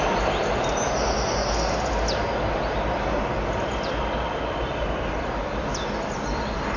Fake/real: real